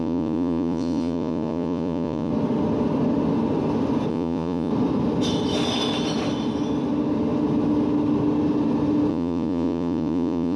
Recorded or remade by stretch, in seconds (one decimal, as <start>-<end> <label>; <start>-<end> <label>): 0.0-2.3 remade; 2.3-4.1 recorded; 4.1-4.7 remade; 4.7-9.1 recorded; 9.1-10.6 remade